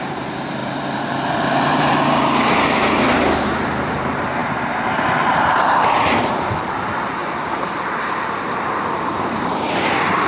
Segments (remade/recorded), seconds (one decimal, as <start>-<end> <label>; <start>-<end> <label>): 0.0-10.3 remade